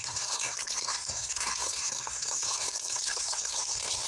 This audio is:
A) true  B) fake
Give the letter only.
B